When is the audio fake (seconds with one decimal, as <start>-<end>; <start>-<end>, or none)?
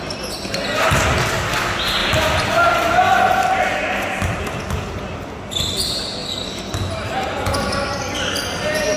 2.0-4.2; 6.2-9.0